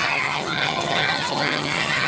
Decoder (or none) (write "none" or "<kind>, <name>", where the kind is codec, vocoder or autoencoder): vocoder, HiFi-GAN